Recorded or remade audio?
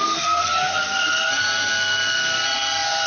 remade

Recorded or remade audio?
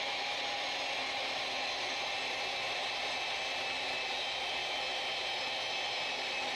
recorded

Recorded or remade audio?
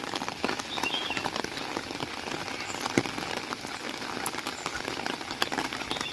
recorded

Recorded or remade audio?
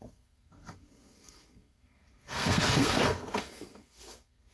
remade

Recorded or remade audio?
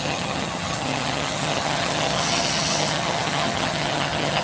remade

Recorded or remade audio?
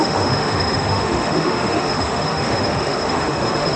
remade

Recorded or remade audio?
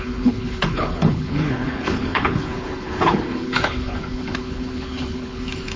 remade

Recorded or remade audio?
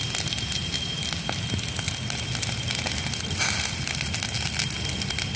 recorded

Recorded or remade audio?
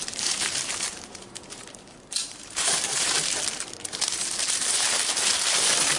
remade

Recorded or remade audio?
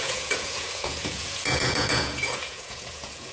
remade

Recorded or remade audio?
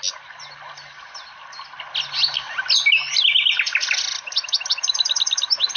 recorded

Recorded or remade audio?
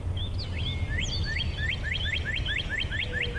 recorded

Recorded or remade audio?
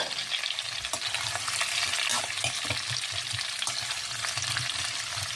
recorded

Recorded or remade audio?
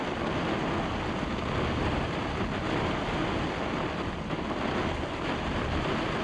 recorded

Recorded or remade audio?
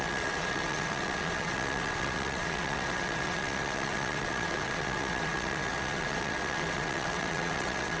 remade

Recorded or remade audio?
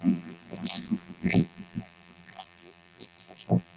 remade